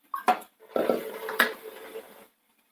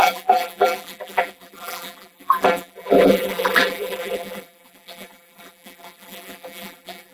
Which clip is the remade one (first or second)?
second